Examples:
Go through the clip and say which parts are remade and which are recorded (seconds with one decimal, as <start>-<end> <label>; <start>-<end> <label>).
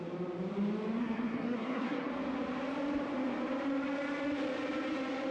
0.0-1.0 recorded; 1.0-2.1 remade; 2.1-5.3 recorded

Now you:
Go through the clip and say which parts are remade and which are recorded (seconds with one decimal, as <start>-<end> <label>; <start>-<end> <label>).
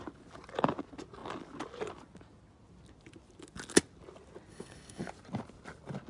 0.0-4.5 recorded; 4.5-5.1 remade; 5.1-6.1 recorded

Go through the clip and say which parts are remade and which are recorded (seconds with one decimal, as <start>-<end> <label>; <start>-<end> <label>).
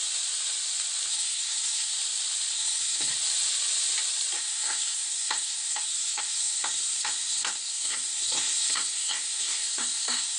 0.0-1.1 recorded; 1.1-1.9 remade; 1.9-2.5 recorded; 2.5-3.1 remade; 3.1-4.4 recorded; 4.4-10.4 remade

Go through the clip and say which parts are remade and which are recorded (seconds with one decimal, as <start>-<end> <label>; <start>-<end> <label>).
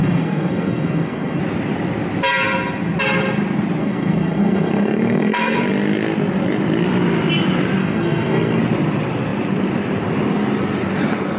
0.0-1.4 remade; 1.4-3.8 recorded; 3.8-5.6 remade; 5.6-7.8 recorded; 7.8-8.6 remade; 8.6-11.4 recorded